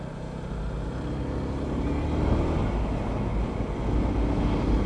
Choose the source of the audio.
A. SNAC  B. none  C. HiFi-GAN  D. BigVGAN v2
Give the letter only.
B